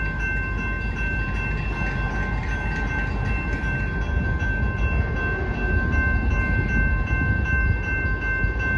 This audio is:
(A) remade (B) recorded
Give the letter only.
B